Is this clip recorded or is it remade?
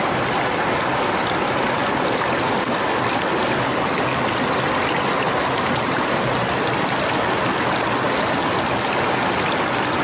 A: recorded